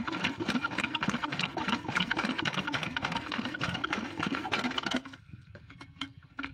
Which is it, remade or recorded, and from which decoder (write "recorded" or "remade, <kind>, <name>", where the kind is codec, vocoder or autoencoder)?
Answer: remade, codec, SNAC